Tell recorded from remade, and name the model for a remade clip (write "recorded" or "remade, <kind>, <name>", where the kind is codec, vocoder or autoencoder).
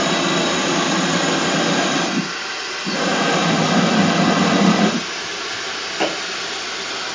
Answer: recorded